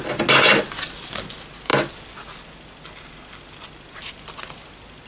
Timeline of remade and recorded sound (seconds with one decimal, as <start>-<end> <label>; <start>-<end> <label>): 0.0-5.1 recorded